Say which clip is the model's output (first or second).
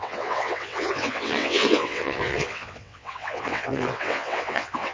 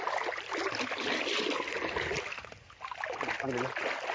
first